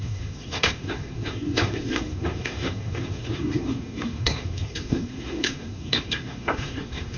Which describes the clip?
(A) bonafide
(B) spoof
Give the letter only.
B